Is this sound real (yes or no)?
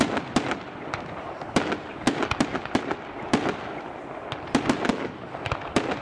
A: yes